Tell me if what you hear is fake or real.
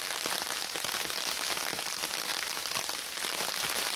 real